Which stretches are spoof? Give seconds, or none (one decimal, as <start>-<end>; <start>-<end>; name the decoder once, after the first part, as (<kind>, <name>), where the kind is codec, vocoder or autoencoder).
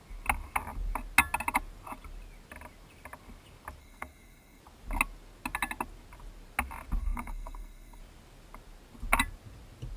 3.8-4.6 (codec, SNAC); 7.0-8.0